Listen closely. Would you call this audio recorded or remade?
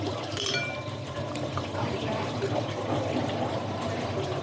remade